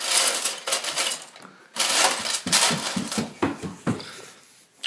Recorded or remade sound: recorded